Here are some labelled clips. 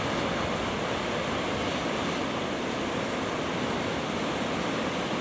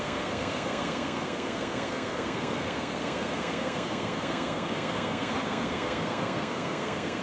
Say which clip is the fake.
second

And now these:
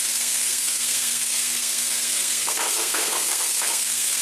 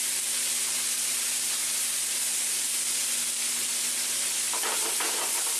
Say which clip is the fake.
first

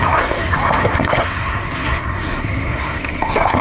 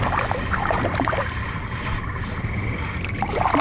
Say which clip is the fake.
first